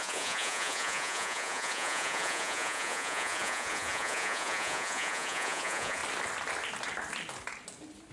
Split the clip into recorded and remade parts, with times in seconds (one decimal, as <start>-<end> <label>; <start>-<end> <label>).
0.0-6.0 remade; 6.0-8.1 recorded